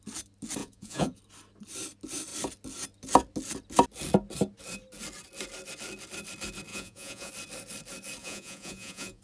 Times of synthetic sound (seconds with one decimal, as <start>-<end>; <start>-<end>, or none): 0.6-1.2; 6.7-7.3; 8.2-9.2